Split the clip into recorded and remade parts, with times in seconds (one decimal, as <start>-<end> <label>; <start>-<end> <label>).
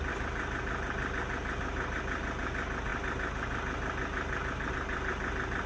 0.0-5.7 recorded